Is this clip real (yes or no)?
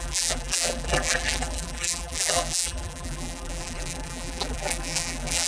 no